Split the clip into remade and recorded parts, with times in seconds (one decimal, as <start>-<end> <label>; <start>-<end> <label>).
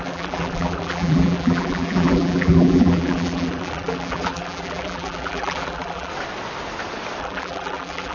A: 0.0-6.1 remade; 6.1-7.2 recorded; 7.2-8.1 remade